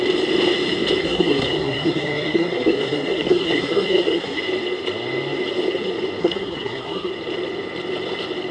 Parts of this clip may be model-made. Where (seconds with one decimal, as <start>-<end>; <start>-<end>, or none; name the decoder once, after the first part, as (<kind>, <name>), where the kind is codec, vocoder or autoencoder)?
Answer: 1.0-4.4 (codec, SNAC); 6.2-7.1